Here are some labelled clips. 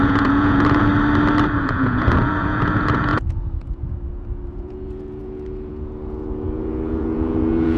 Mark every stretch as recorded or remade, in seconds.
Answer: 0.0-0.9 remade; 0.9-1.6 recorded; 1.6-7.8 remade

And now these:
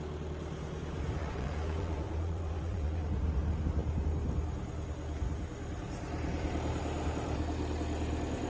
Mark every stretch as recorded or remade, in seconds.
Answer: 0.0-1.2 recorded; 1.2-3.0 remade; 3.0-8.5 recorded

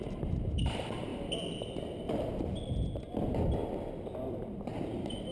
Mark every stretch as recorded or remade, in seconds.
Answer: 0.0-1.1 remade; 1.1-4.3 recorded; 4.3-5.3 remade

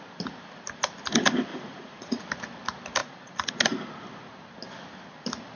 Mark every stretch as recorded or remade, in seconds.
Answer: 0.0-1.5 recorded; 1.5-2.2 remade; 2.2-3.0 recorded; 3.0-3.5 remade; 3.5-5.6 recorded

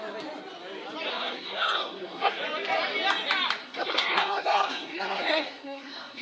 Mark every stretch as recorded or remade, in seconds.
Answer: 0.0-1.1 recorded; 1.1-2.4 remade; 2.4-3.6 recorded; 3.6-6.2 remade

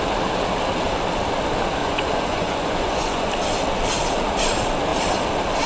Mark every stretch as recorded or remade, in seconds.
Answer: 0.0-1.8 recorded; 1.8-3.3 remade; 3.3-5.7 recorded

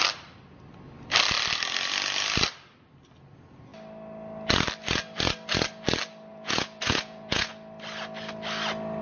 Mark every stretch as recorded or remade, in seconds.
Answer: 0.0-6.3 recorded; 6.3-7.5 remade; 7.5-9.0 recorded

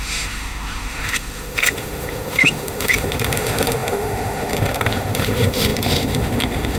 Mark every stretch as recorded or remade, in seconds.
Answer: 0.0-6.8 remade